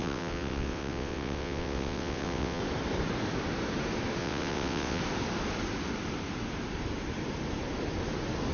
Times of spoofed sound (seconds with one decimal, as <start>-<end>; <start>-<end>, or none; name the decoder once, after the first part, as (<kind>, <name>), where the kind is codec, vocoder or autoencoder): 0.0-2.6 (vocoder, WaveNeXt); 4.2-5.0